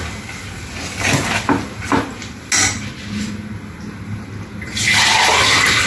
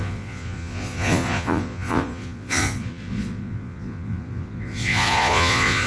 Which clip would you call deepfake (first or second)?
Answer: second